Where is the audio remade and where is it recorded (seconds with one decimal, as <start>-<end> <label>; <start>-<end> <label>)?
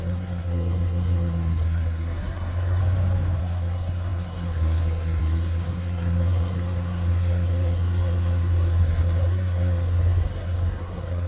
0.0-2.8 remade; 2.8-3.4 recorded; 3.4-11.3 remade